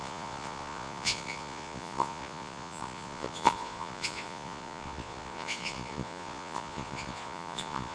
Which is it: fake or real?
fake